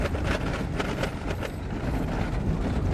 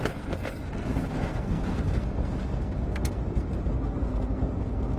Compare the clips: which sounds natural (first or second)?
first